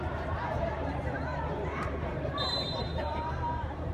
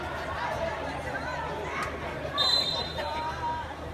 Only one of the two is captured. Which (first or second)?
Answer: second